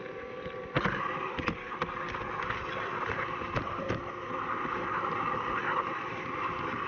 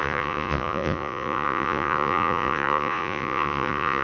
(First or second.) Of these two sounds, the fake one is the second